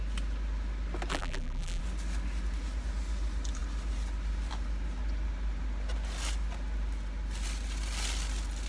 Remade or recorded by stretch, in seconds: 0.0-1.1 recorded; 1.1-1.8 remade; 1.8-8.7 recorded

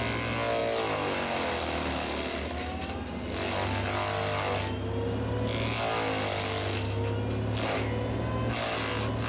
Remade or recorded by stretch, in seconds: 0.0-9.3 recorded